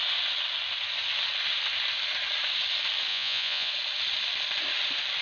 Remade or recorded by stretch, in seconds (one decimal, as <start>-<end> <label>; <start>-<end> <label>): 0.0-3.1 recorded; 3.1-3.7 remade; 3.7-5.2 recorded